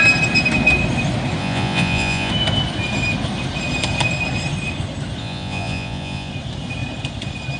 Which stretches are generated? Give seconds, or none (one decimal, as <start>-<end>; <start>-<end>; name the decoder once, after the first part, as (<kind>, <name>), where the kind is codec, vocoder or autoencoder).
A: 1.4-2.3 (vocoder, Vocos); 5.2-6.3

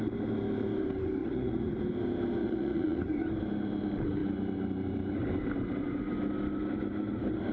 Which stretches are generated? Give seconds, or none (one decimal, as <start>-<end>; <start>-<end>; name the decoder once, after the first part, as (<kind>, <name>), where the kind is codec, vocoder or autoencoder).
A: 1.2-1.7 (vocoder, Vocos); 2.4-3.0

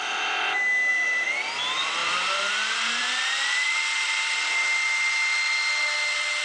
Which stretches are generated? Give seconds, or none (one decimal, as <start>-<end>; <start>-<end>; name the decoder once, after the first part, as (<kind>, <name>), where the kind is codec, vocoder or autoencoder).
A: 0.9-1.5 (vocoder, BigVGAN v2); 2.0-2.5; 3.0-4.6

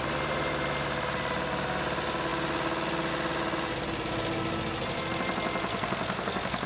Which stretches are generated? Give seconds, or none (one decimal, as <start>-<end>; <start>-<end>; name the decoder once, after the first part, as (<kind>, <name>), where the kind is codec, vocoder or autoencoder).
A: 5.7-6.7 (codec, SNAC)

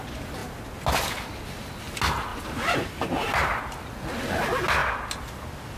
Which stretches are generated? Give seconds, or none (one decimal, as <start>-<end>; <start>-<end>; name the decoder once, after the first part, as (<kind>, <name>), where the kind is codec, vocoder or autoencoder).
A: 2.3-3.6 (vocoder, BigVGAN v2)